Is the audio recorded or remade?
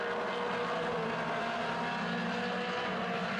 recorded